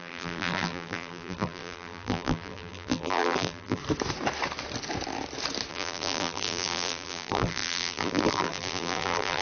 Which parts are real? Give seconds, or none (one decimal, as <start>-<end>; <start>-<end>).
3.8-5.7